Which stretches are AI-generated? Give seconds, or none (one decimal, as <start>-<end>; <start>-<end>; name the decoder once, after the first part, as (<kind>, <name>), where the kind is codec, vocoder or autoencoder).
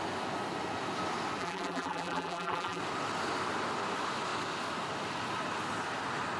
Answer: 1.4-2.8 (vocoder, BigVGAN v2)